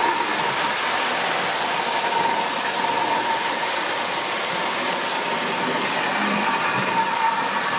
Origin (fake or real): real